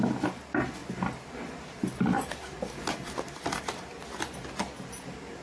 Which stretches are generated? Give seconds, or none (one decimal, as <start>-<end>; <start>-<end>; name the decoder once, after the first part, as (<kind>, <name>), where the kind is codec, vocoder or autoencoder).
none